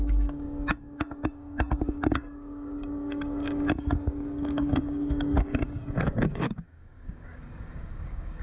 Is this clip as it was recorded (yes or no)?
no